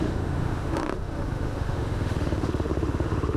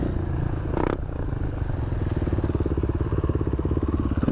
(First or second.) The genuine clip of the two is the second